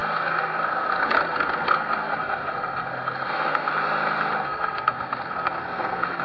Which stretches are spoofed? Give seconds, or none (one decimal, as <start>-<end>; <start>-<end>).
0.0-3.7; 4.4-6.2